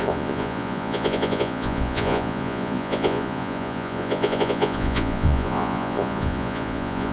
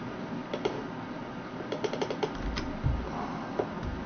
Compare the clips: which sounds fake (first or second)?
first